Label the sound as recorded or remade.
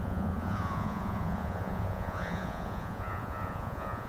remade